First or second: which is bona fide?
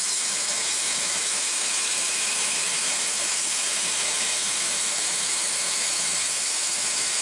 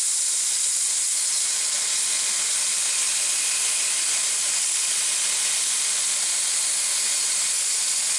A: second